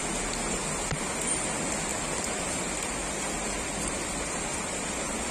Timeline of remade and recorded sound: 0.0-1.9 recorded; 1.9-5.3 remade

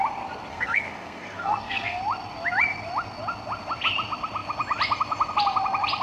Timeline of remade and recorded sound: 0.0-0.5 recorded; 0.5-2.0 remade; 2.0-6.0 recorded

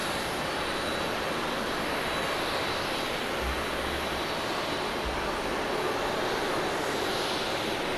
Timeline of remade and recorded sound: 0.0-8.0 recorded

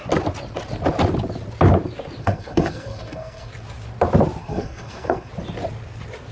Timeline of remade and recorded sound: 0.0-2.2 recorded; 2.2-3.5 remade; 3.5-4.4 recorded; 4.4-5.3 remade; 5.3-6.3 recorded

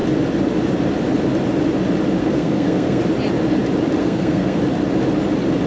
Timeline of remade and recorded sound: 0.0-2.2 recorded; 2.2-3.0 remade; 3.0-4.0 recorded; 4.0-4.6 remade; 4.6-5.7 recorded

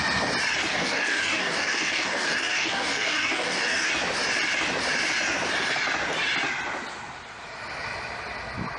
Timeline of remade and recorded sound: 0.0-0.7 recorded; 0.7-3.9 remade; 3.9-8.8 recorded

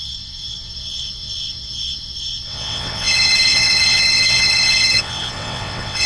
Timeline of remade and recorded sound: 0.0-6.1 remade